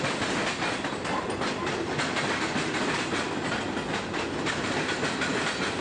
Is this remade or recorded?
recorded